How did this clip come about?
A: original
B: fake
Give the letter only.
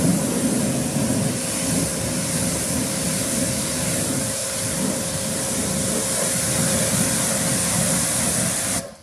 A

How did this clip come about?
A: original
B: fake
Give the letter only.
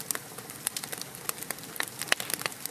A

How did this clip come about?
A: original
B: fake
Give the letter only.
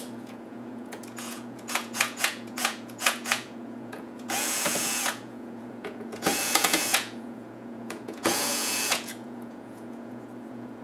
B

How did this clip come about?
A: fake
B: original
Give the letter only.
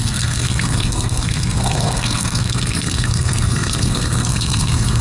A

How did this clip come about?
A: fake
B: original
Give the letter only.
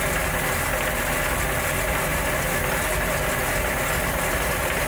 B